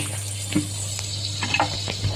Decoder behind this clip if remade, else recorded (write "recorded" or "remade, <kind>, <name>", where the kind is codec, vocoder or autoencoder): recorded